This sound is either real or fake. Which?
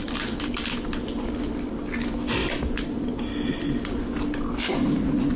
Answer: real